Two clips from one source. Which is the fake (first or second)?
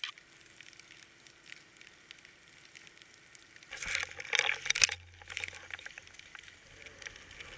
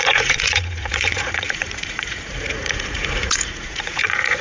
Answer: second